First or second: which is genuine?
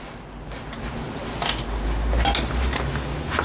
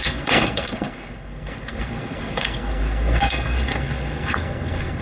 first